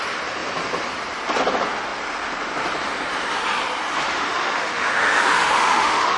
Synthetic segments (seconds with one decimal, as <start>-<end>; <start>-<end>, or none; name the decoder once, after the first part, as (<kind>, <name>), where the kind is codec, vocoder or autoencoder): 3.9-6.2 (autoencoder, DAC-VAE)